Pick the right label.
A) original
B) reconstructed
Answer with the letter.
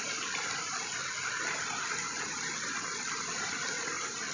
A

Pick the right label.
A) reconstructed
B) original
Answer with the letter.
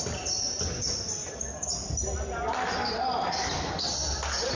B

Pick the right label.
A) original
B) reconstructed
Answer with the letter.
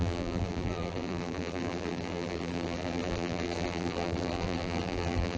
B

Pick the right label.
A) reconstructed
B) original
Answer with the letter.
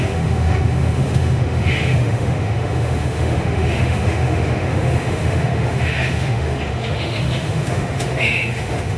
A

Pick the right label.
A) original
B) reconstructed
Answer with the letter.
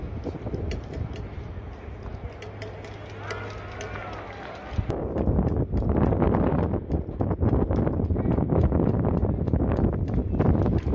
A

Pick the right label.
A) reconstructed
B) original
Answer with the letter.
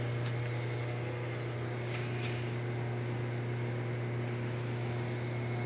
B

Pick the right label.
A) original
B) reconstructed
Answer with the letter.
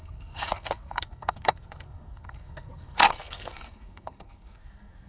B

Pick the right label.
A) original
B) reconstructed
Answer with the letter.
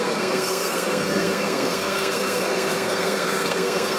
B